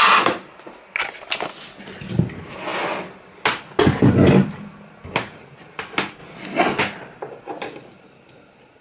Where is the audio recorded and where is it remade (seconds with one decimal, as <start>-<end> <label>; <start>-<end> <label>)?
0.0-8.8 recorded